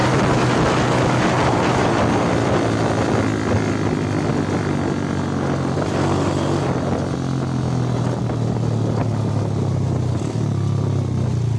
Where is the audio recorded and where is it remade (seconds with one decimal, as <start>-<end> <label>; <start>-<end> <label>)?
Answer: 0.0-11.6 recorded